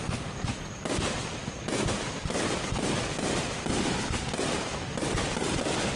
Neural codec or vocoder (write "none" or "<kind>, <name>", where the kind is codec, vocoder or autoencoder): none